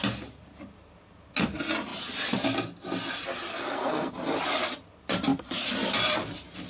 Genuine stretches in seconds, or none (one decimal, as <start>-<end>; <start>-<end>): 0.0-3.5; 4.1-6.7